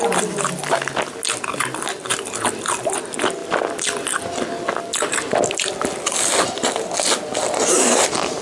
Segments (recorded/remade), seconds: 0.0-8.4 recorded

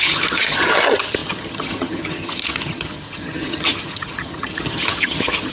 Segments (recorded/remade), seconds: 0.0-5.5 remade